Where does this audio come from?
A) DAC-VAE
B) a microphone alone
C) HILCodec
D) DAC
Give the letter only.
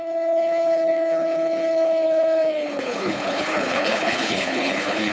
C